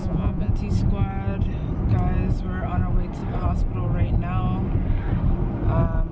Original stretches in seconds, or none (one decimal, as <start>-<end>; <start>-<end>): 0.5-6.1